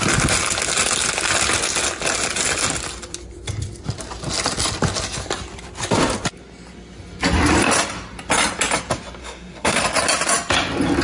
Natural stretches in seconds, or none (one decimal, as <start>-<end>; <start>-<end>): 0.0-9.2; 9.8-11.0